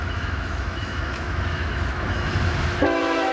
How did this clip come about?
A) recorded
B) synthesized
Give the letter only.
B